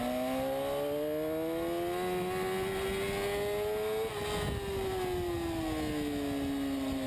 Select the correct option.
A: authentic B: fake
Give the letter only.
A